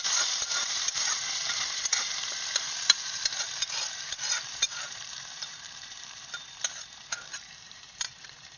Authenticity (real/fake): fake